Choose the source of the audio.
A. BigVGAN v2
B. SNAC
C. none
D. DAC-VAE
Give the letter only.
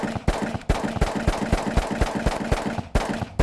C